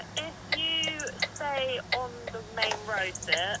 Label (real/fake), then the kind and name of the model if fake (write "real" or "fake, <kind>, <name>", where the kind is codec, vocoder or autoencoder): real